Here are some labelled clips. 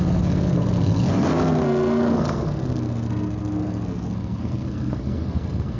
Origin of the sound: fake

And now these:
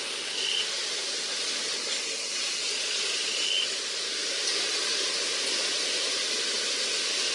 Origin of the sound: real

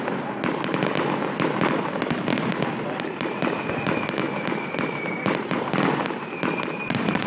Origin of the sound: real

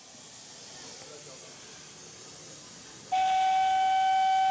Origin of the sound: real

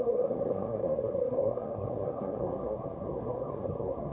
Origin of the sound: fake